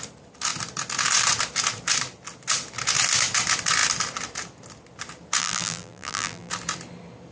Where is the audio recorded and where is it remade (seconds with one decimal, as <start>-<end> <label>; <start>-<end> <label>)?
0.0-5.4 recorded; 5.4-6.5 remade; 6.5-7.3 recorded